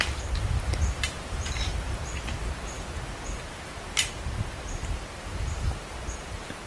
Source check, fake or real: real